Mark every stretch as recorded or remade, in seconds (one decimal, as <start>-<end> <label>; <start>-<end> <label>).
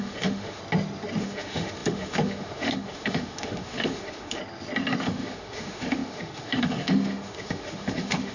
0.0-0.6 remade; 0.6-1.2 recorded; 1.2-4.4 remade; 4.4-5.0 recorded; 5.0-8.3 remade